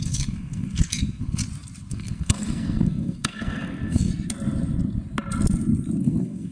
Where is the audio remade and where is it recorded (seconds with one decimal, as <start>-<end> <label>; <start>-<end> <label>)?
0.0-1.4 remade; 1.4-1.9 recorded; 1.9-4.1 remade; 4.1-6.0 recorded; 6.0-6.5 remade